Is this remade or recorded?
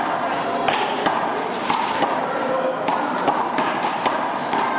recorded